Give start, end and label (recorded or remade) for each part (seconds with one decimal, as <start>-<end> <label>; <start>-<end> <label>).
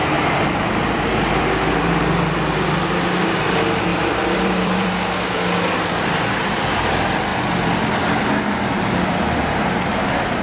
0.0-1.0 remade; 1.0-3.9 recorded; 3.9-4.9 remade; 4.9-7.3 recorded; 7.3-8.2 remade; 8.2-10.4 recorded